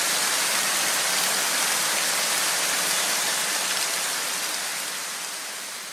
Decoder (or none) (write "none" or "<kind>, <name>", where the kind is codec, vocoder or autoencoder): none